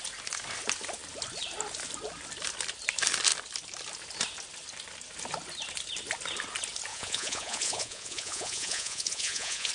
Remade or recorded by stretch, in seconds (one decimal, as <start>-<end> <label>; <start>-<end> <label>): 0.0-6.9 recorded; 6.9-9.7 remade